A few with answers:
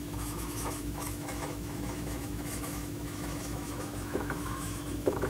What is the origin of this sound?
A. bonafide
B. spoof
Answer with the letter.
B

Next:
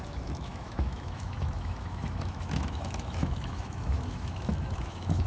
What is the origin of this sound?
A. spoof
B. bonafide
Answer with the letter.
A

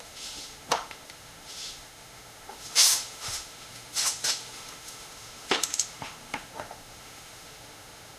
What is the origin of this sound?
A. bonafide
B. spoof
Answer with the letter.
B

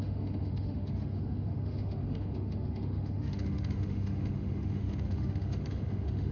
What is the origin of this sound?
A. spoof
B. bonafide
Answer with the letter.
A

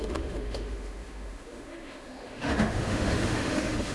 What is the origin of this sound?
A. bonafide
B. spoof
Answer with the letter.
B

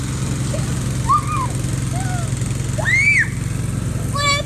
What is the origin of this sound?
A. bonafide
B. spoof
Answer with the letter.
A